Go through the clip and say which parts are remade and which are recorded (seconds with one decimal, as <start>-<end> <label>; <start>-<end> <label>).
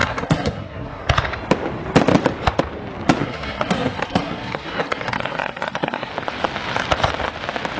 0.0-1.0 remade; 1.0-3.2 recorded; 3.2-6.1 remade; 6.1-7.8 recorded